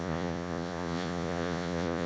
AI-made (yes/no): yes